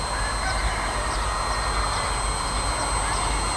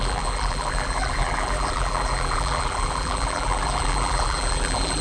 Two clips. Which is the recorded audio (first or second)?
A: first